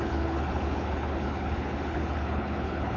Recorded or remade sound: remade